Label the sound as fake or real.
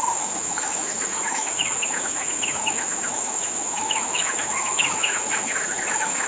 fake